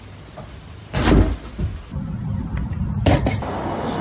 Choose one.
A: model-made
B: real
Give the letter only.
B